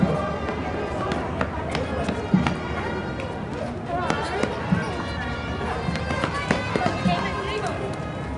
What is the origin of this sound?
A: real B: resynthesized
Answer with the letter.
A